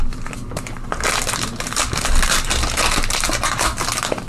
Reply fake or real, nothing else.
real